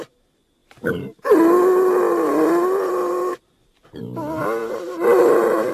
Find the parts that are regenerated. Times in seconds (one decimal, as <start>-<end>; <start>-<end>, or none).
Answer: none